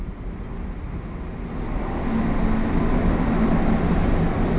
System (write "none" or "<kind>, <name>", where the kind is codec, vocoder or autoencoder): none